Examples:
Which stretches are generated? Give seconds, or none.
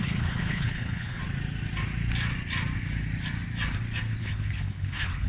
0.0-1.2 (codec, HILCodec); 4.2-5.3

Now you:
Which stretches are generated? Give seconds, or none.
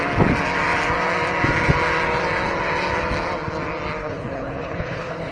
4.0-5.3 (codec, HILCodec)